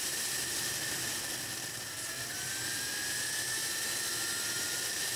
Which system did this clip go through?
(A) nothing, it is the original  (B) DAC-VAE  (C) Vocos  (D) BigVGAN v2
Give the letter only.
A